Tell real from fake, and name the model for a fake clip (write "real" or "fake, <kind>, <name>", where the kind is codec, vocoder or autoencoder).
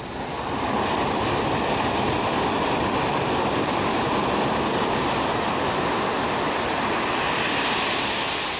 real